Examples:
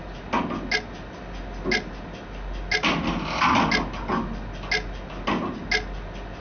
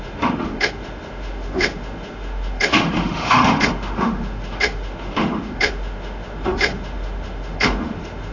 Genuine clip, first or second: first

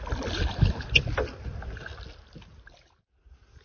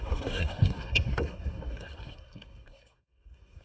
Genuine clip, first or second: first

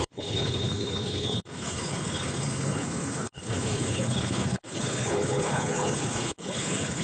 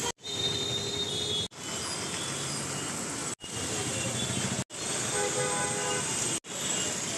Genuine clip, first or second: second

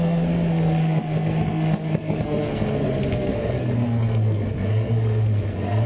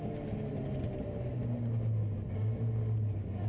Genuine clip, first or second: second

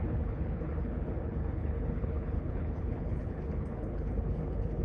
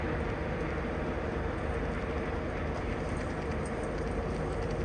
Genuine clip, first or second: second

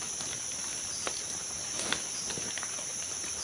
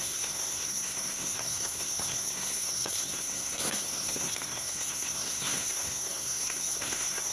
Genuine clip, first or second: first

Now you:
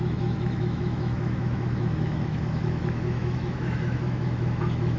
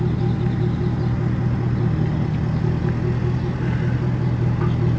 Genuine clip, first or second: second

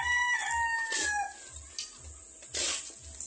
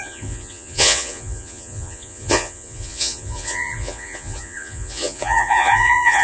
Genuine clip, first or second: first